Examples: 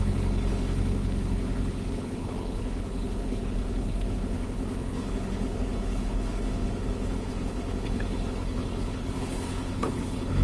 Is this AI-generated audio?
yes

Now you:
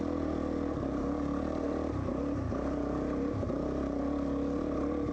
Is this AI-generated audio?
no